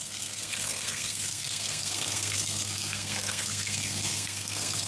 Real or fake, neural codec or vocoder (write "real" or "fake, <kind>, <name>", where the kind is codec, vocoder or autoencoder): fake, codec, SNAC